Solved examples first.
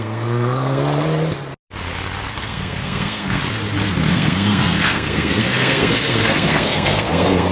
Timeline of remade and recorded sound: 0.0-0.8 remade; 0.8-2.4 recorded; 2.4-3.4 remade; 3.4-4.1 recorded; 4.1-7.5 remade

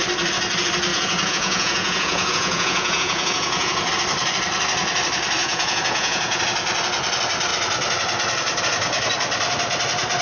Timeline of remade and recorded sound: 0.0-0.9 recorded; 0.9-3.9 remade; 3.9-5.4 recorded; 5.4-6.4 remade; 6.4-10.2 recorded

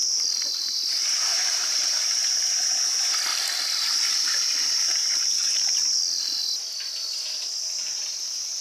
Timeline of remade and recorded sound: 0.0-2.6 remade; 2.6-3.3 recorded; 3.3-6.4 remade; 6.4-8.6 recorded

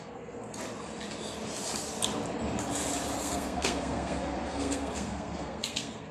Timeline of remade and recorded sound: 0.0-0.5 remade; 0.5-3.2 recorded; 3.2-6.1 remade